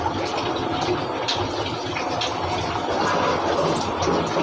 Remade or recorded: recorded